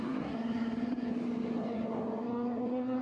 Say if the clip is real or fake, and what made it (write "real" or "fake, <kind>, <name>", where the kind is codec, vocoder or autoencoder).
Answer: fake, codec, SNAC